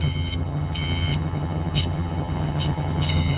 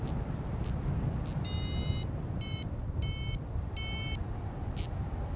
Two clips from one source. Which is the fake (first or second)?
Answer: first